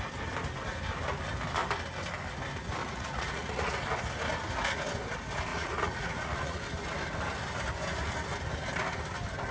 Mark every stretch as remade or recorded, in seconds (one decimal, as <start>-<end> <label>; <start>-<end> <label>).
0.0-2.8 recorded; 2.8-3.7 remade; 3.7-5.5 recorded; 5.5-6.6 remade; 6.6-9.5 recorded